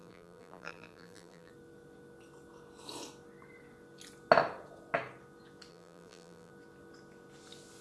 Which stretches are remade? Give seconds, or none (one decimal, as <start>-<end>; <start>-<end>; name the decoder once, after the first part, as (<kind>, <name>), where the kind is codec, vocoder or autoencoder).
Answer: 0.0-1.5 (vocoder, BigVGAN v2); 5.7-6.5